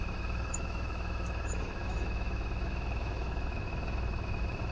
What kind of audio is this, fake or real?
fake